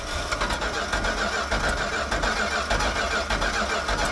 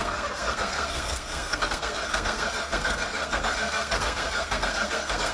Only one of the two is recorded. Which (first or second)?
first